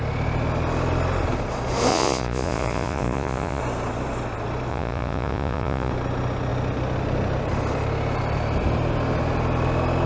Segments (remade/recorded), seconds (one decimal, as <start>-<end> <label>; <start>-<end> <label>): 0.0-1.9 recorded; 1.9-3.6 remade; 3.6-4.7 recorded; 4.7-5.9 remade; 5.9-10.1 recorded